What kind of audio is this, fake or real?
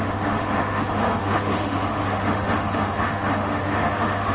fake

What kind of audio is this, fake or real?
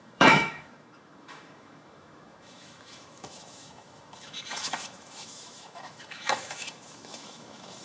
fake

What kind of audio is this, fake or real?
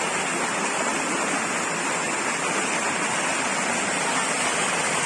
real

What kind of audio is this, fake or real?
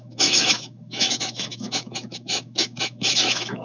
fake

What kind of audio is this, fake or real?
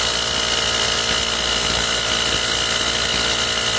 real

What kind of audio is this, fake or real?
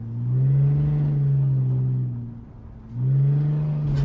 real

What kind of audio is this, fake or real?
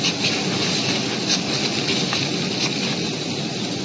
real